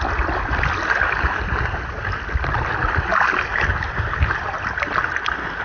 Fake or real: real